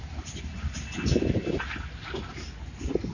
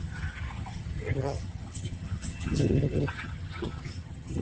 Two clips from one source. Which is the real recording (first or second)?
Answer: first